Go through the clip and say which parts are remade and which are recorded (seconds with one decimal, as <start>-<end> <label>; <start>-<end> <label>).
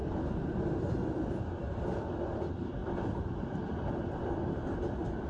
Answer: 0.0-0.9 recorded; 0.9-5.3 remade